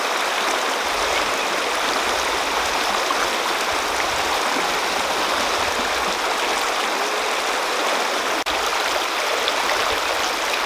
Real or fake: real